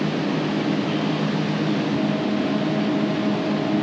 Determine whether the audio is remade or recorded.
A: recorded